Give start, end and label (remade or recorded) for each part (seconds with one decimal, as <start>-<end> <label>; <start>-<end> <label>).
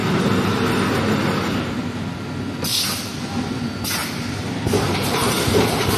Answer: 0.0-4.0 recorded; 4.0-6.0 remade